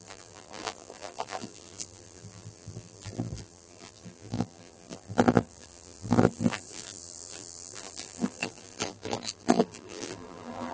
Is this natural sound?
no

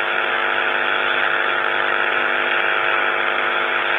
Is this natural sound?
yes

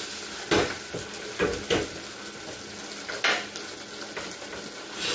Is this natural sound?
yes